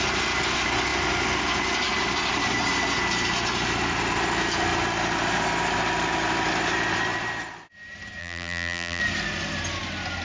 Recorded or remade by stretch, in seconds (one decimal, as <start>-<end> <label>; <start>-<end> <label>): 0.0-8.2 recorded; 8.2-9.0 remade; 9.0-10.2 recorded